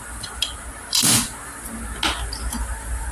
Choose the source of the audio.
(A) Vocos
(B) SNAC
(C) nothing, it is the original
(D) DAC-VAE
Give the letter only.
C